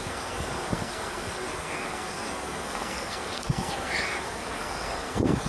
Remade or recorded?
remade